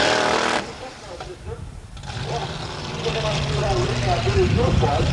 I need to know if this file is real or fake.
fake